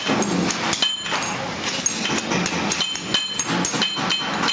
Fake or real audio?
real